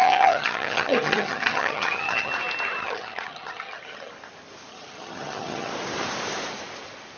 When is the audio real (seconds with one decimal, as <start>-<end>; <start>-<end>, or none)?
2.3-2.8; 4.1-4.7; 5.7-7.2

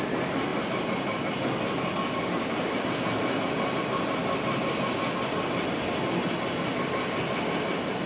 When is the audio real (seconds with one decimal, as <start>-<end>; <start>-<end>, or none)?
0.0-8.1